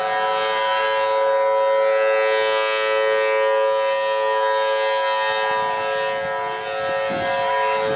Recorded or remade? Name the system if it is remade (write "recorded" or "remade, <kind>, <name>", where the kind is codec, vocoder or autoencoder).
recorded